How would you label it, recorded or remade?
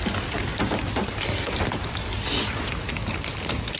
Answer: recorded